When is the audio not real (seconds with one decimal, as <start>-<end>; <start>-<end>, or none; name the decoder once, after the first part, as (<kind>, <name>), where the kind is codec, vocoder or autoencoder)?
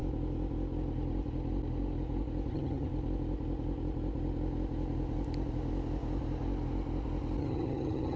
2.5-2.9 (vocoder, HiFi-GAN); 7.4-8.2